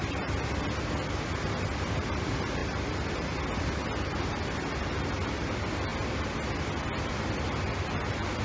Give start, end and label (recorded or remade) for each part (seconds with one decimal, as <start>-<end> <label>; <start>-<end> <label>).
0.0-8.4 recorded

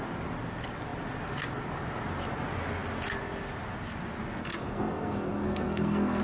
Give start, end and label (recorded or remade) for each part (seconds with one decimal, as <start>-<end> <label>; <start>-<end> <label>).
0.0-4.4 recorded; 4.4-6.2 remade

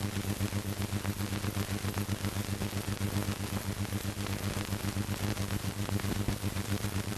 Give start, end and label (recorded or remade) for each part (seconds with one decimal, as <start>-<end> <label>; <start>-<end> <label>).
0.0-5.3 recorded; 5.3-7.2 remade